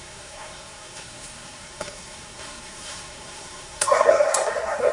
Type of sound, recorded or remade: remade